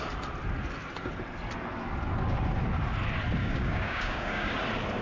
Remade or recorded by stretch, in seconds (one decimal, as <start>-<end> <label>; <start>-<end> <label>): 0.0-3.4 recorded; 3.4-4.5 remade; 4.5-5.0 recorded